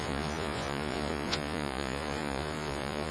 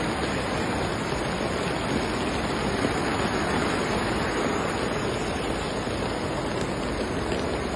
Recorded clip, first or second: second